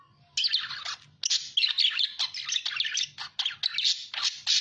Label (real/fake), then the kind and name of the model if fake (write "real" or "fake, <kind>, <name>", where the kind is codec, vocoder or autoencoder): real